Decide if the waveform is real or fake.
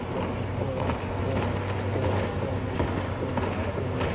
real